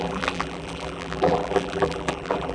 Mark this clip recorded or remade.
remade